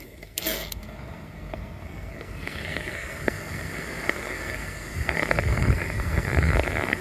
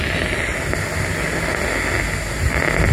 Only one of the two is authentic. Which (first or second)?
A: second